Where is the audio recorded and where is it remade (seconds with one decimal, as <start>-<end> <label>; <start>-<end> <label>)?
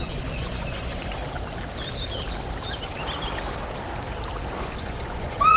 0.0-1.2 remade; 1.2-4.6 recorded; 4.6-5.6 remade